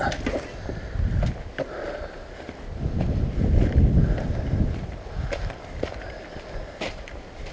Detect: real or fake real